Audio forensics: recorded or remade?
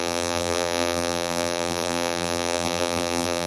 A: remade